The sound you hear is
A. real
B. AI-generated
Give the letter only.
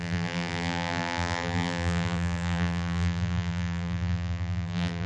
B